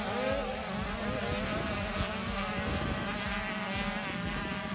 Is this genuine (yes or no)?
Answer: yes